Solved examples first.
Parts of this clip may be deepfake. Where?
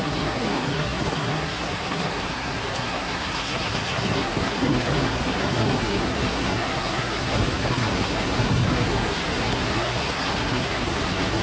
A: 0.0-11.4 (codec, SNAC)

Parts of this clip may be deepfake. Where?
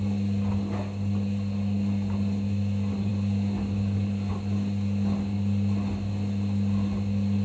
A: none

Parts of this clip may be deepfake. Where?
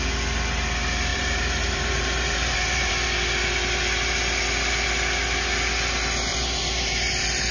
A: 1.1-2.9 (vocoder, BigVGAN v2); 6.3-7.5